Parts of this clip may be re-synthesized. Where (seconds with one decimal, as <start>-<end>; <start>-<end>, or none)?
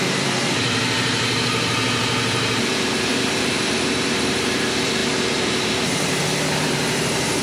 0.0-7.4